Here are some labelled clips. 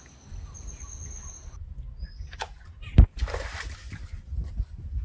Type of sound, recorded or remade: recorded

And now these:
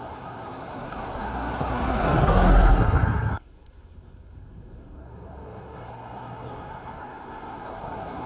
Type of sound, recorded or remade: remade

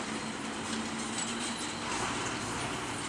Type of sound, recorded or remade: recorded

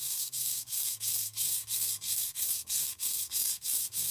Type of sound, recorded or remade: remade